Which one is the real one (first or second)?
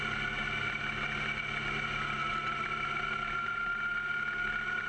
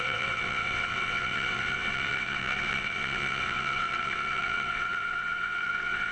first